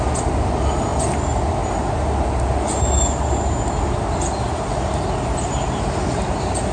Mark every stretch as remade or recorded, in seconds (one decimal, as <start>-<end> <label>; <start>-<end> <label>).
0.0-6.7 recorded